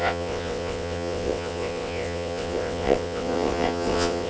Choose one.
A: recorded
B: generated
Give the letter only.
B